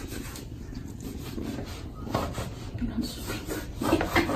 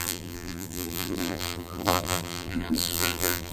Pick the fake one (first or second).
second